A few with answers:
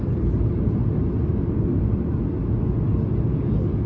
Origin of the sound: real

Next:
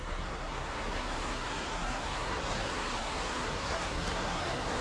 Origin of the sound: fake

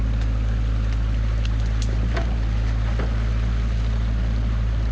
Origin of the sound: real